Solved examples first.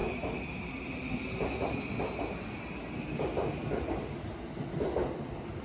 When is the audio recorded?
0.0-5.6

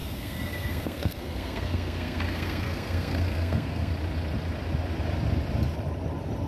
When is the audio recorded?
3.9-6.5

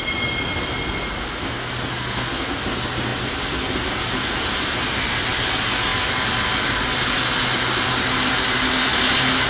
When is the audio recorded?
0.0-1.9; 2.5-9.5

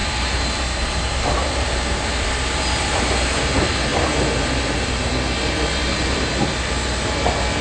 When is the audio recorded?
2.1-3.9; 5.1-5.8; 6.3-7.6